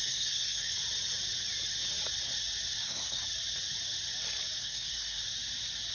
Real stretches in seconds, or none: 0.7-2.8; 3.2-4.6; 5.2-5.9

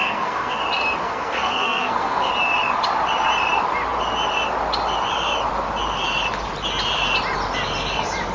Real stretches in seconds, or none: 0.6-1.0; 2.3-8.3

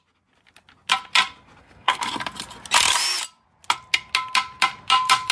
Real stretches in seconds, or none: 0.0-1.6; 2.1-5.3

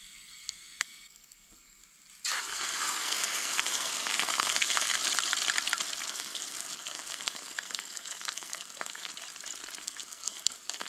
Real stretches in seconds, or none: 1.8-2.4; 5.0-6.1; 9.1-9.8

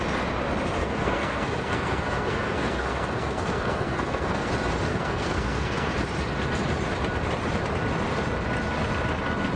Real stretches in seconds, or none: 0.0-0.8; 4.5-4.9; 5.9-9.6

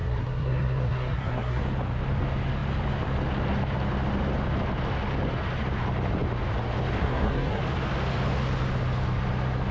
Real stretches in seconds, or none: 1.6-7.0; 7.6-9.7

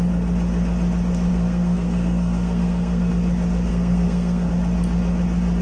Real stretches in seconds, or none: 0.0-1.3; 3.1-3.7; 4.5-5.6